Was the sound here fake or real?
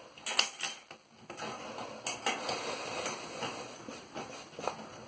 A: real